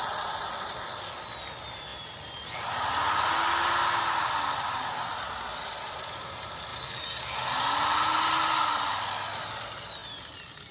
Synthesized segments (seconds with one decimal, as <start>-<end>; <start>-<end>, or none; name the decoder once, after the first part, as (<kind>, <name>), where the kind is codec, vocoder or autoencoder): none